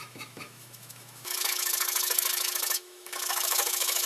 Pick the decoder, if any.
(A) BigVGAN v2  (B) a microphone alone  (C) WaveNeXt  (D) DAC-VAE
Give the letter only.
D